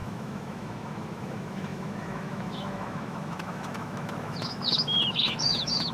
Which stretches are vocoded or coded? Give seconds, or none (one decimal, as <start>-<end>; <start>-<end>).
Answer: 0.0-5.9